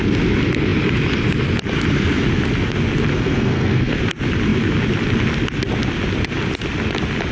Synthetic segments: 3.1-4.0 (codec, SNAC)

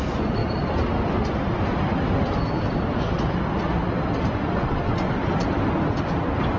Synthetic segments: 0.0-0.4 (vocoder, Vocos); 4.4-5.2

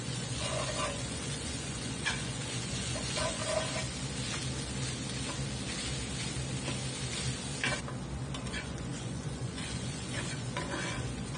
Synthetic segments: 0.0-3.4 (vocoder, Vocos); 8.5-11.4

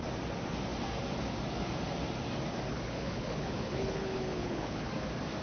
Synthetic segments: 2.7-4.9 (codec, HILCodec)